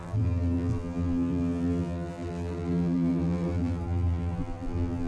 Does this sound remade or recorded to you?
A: remade